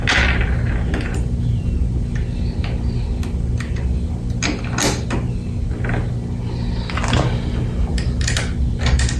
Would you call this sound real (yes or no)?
yes